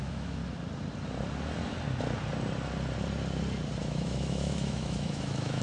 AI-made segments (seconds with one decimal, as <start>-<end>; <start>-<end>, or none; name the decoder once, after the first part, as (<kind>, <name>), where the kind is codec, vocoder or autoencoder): 0.0-0.4 (autoencoder, DAC-VAE); 3.8-5.6